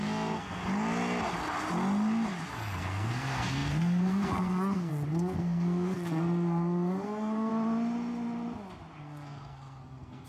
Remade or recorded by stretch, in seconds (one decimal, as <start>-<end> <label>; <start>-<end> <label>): 0.0-0.6 remade; 0.6-2.5 recorded; 2.5-7.5 remade; 7.5-9.0 recorded; 9.0-10.3 remade